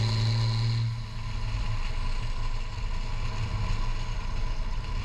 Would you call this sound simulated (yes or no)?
no